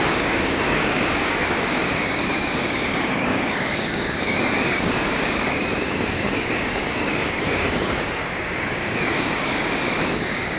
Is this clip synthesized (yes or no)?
yes